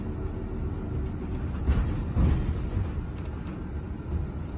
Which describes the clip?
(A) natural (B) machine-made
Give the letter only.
A